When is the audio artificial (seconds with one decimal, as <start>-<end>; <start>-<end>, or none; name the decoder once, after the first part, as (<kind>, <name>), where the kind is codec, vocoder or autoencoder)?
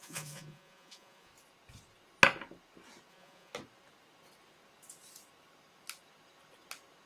0.0-1.3 (vocoder, Vocos); 3.1-3.5